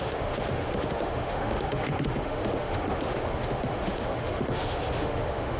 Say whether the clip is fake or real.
fake